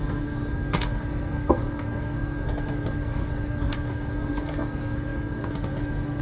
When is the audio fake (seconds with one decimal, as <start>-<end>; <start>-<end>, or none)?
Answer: 0.0-6.2